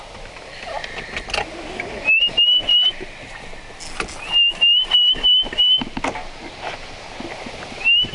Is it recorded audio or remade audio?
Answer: recorded